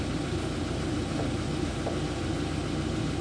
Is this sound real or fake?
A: real